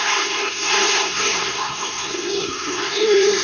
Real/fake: fake